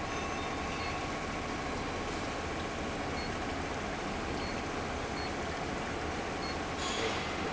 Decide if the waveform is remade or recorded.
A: recorded